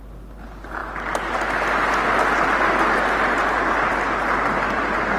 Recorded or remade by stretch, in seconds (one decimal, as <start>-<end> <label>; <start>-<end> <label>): 0.0-5.2 recorded